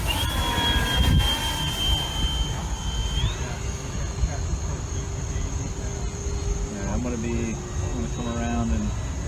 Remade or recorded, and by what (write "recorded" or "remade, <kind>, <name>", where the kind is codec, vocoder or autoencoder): recorded